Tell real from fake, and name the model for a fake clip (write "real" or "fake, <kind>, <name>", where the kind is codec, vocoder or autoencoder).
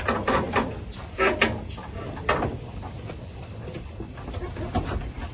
real